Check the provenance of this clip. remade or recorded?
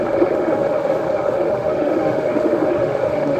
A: remade